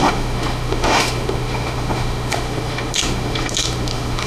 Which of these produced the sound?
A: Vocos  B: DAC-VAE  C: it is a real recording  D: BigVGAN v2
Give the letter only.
B